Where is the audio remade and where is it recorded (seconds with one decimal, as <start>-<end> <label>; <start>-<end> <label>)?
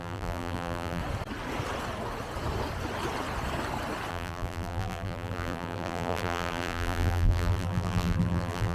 0.0-1.0 remade; 1.0-4.1 recorded; 4.1-8.7 remade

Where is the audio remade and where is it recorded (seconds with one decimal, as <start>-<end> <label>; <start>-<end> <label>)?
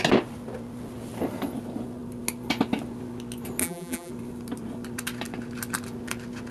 0.0-3.6 recorded; 3.6-4.1 remade; 4.1-6.5 recorded